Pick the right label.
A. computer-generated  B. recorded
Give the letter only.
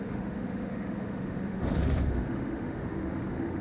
A